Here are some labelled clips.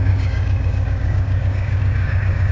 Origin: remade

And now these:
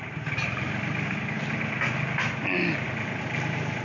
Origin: recorded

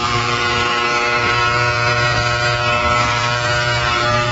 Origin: remade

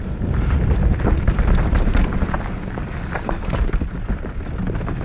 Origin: recorded